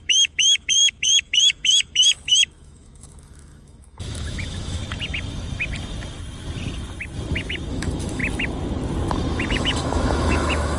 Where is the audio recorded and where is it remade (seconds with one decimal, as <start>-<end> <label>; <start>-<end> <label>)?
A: 0.0-4.8 remade; 4.8-7.7 recorded; 7.7-8.2 remade; 8.2-9.5 recorded; 9.5-10.8 remade